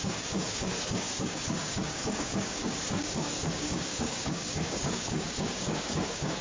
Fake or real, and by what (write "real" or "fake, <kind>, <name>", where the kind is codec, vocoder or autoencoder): fake, codec, DAC